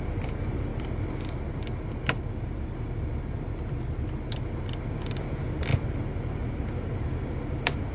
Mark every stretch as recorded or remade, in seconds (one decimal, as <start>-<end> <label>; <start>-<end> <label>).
0.0-7.9 recorded